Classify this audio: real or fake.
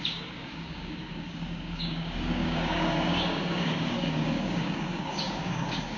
fake